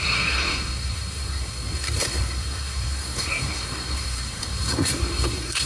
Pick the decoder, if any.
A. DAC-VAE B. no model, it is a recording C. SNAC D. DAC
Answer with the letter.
C